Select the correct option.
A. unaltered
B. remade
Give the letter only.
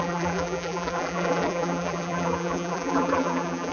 B